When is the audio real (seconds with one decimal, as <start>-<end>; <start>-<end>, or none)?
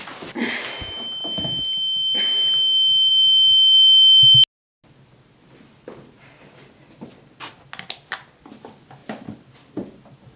0.0-10.4